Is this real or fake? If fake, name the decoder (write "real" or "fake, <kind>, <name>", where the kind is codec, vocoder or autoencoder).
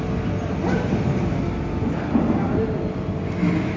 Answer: real